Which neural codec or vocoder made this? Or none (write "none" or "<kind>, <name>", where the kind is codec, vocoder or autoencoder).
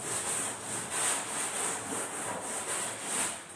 none